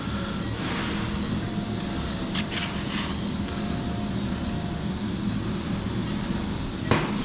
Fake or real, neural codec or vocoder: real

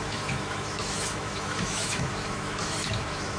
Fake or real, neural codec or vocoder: fake, autoencoder, DAC-VAE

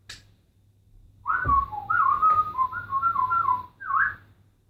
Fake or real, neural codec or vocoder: real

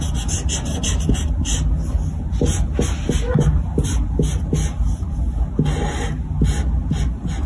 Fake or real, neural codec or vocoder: real